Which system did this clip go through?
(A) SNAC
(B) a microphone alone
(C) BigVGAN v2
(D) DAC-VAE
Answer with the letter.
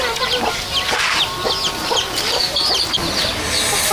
B